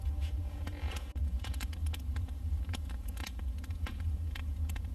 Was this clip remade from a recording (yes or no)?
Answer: yes